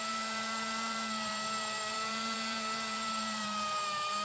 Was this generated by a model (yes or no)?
yes